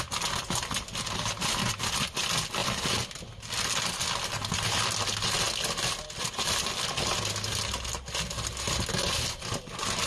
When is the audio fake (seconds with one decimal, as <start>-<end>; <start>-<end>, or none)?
none